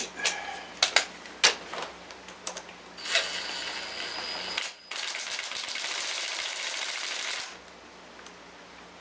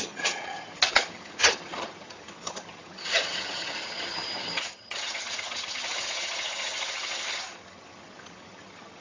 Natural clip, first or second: first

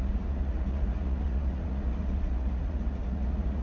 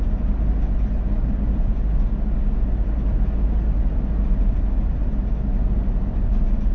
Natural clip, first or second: second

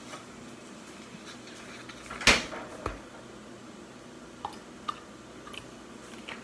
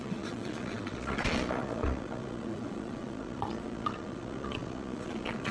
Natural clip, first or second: first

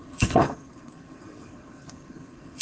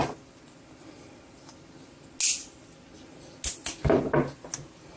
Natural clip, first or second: second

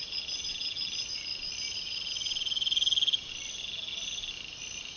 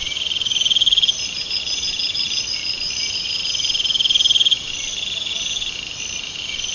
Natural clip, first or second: first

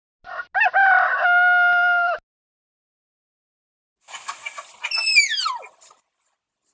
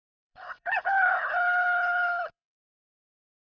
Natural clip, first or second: first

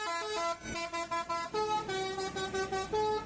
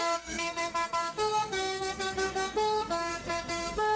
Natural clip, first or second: first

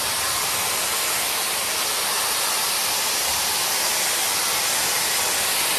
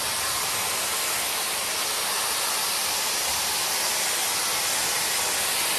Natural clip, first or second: second